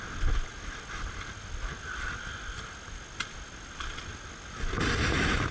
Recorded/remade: recorded